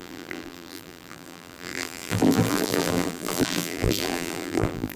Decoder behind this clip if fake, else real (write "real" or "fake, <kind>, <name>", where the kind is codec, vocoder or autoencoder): fake, vocoder, BigVGAN v2